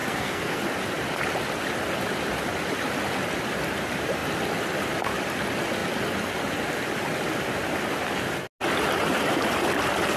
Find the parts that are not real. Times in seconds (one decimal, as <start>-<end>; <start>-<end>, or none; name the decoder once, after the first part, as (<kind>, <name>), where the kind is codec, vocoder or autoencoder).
0.0-0.6 (codec, SNAC)